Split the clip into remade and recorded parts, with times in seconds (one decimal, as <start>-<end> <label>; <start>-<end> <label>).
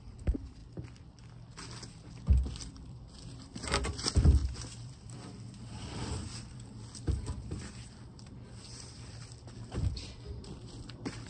0.0-0.6 remade; 0.6-2.6 recorded; 2.6-11.3 remade